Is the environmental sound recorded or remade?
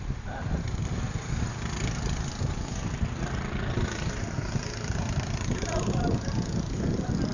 recorded